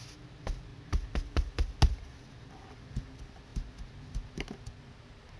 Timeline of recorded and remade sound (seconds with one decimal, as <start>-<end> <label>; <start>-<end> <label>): 0.0-5.4 recorded